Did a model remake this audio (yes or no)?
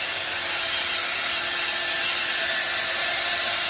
no